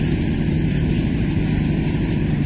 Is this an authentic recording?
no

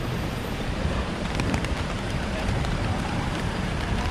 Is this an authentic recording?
no